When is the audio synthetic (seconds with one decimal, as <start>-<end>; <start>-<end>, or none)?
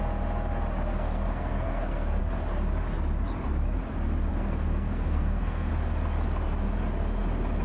0.9-2.2; 4.3-5.7